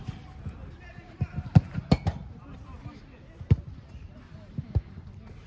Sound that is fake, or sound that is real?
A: real